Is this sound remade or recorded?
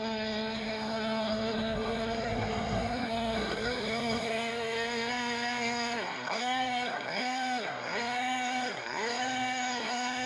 remade